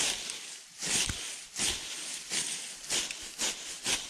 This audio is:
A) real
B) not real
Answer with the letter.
A